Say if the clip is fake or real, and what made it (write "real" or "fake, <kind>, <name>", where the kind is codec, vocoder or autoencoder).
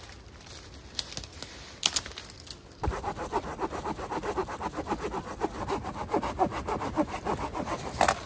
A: real